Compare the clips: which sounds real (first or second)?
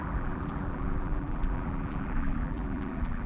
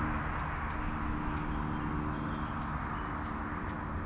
second